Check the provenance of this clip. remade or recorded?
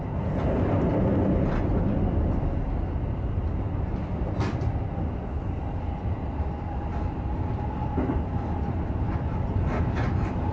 recorded